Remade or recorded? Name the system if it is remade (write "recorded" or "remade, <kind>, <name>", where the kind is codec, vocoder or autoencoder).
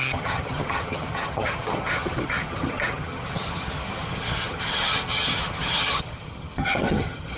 remade, vocoder, HiFi-GAN